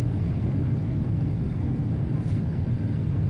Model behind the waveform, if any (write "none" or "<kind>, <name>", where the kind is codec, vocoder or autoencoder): codec, SNAC